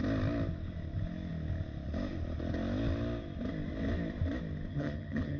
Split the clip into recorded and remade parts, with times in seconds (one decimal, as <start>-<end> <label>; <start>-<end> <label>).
0.0-4.7 recorded; 4.7-5.4 remade